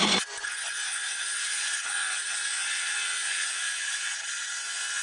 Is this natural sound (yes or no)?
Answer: no